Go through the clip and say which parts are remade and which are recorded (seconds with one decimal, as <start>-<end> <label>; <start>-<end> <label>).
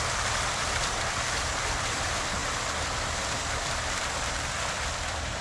0.0-2.4 remade; 2.4-3.5 recorded; 3.5-5.4 remade